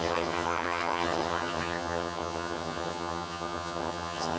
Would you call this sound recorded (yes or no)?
no